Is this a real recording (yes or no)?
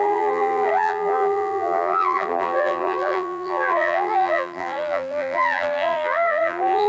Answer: no